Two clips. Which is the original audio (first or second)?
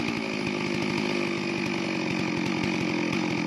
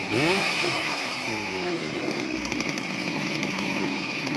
first